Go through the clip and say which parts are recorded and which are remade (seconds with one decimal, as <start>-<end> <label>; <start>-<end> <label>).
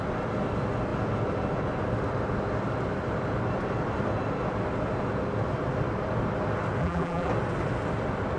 0.0-6.8 recorded; 6.8-7.3 remade; 7.3-8.4 recorded